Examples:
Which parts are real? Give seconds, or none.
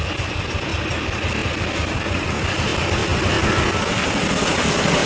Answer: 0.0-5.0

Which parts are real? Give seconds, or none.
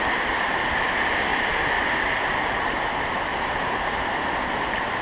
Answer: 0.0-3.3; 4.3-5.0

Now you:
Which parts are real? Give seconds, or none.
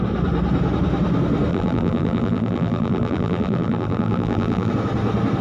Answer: 0.0-1.5; 4.7-5.4